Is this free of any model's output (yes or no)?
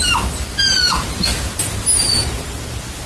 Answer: yes